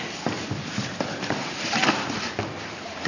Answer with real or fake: real